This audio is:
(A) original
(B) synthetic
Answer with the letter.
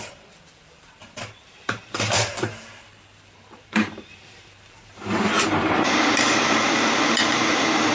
B